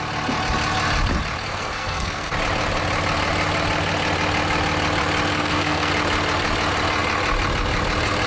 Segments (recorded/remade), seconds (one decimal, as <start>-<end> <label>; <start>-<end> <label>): 0.0-1.4 recorded; 1.4-2.3 remade; 2.3-5.3 recorded; 5.3-5.9 remade; 5.9-8.3 recorded